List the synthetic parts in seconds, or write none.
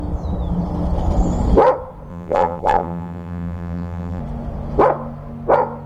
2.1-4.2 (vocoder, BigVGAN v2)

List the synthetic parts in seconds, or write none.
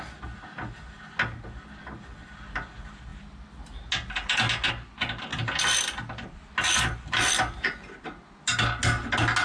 none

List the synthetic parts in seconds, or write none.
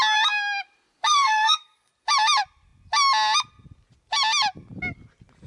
1.1-1.9 (codec, SNAC)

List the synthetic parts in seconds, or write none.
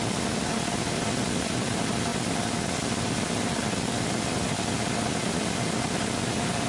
0.0-6.7 (vocoder, BigVGAN v2)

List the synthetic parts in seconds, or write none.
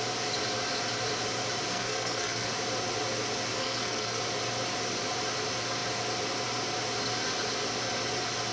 1.7-2.5 (codec, SNAC); 3.6-4.2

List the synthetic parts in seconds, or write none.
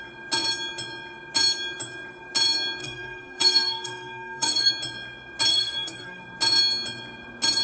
2.8-4.7 (codec, SNAC); 5.5-6.2